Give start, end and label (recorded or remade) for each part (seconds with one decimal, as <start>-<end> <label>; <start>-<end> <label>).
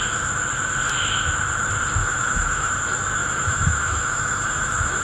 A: 0.0-2.0 recorded; 2.0-2.7 remade; 2.7-3.2 recorded; 3.2-5.0 remade